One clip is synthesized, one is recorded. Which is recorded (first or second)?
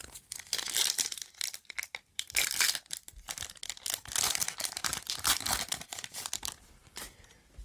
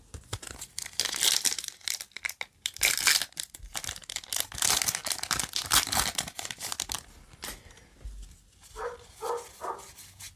second